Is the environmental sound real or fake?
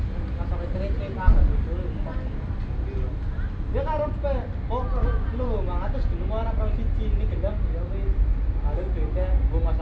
real